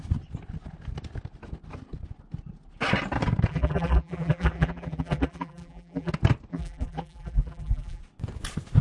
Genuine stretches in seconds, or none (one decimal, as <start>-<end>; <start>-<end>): 0.0-3.5; 6.1-6.5; 8.0-8.8